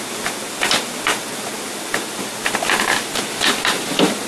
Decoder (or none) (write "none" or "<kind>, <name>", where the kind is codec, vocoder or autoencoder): none